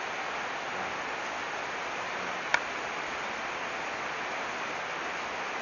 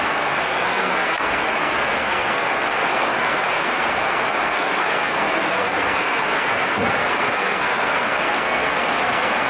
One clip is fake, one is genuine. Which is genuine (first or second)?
first